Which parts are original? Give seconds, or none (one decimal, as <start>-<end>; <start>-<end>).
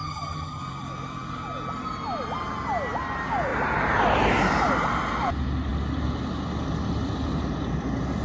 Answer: 0.6-8.2